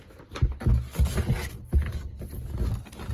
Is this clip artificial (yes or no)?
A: no